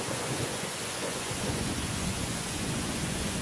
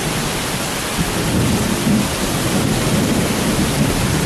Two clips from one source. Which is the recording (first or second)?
second